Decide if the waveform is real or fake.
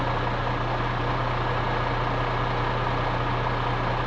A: real